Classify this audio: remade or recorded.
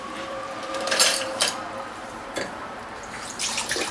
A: remade